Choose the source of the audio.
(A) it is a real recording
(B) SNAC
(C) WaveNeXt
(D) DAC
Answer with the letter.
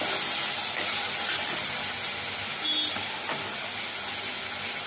A